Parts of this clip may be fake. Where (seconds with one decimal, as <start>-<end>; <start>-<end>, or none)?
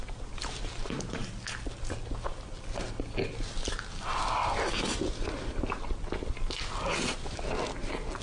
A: none